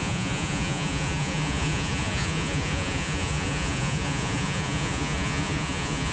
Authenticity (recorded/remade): remade